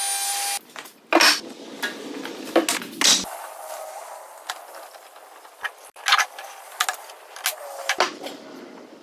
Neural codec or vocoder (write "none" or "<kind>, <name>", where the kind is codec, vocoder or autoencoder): none